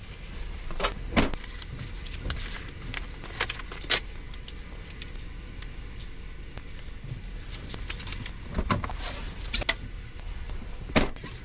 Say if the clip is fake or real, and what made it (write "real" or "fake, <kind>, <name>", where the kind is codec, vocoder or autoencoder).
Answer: real